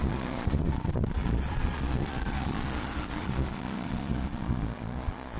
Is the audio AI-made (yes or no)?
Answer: yes